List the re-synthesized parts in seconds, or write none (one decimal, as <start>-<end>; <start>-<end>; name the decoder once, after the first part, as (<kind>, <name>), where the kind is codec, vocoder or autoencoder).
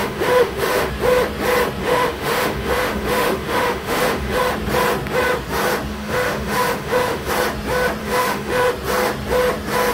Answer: 0.0-0.9 (autoencoder, DAC-VAE); 1.8-4.4; 5.9-7.3; 8.0-8.7